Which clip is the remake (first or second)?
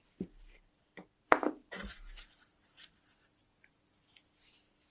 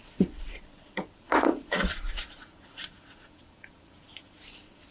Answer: second